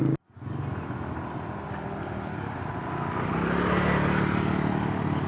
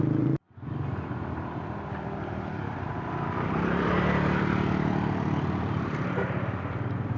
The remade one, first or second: second